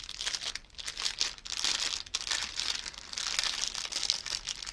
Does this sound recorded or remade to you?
recorded